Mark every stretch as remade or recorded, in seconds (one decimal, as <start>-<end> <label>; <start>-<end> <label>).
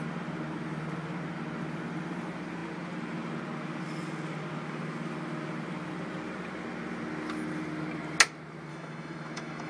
0.0-8.7 recorded; 8.7-9.7 remade